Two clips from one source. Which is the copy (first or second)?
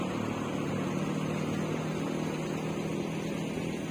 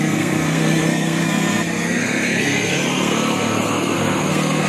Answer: second